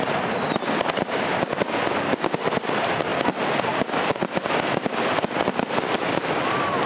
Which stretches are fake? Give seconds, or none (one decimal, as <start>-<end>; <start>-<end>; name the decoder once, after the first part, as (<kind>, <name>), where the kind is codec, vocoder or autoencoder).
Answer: none